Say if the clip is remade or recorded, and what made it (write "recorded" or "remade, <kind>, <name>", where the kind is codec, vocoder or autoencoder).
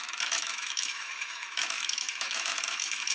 remade, autoencoder, DAC-VAE